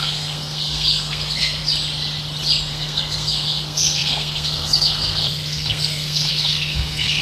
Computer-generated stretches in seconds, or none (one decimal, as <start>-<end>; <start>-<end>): 0.0-1.6; 2.7-7.2